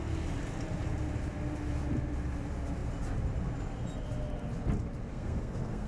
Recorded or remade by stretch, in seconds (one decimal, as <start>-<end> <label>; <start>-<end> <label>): 0.0-5.1 recorded; 5.1-5.9 remade